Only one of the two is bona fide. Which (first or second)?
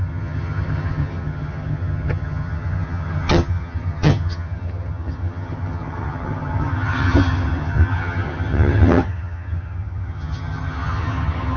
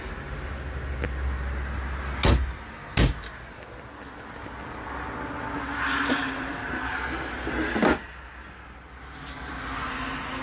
second